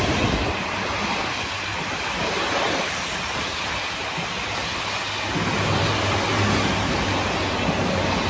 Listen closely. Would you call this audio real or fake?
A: real